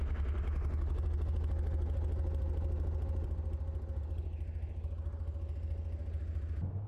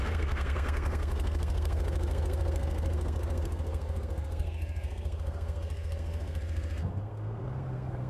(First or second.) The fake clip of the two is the second